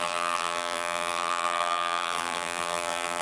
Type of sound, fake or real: fake